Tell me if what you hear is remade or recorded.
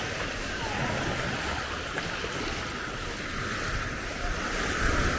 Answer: recorded